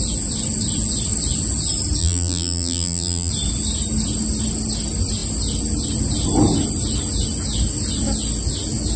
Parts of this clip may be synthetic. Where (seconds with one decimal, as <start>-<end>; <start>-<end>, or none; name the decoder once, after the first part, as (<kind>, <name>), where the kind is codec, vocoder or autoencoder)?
2.0-3.3 (vocoder, BigVGAN v2)